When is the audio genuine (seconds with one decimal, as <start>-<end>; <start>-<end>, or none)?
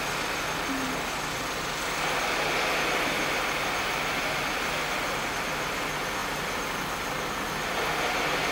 0.0-8.5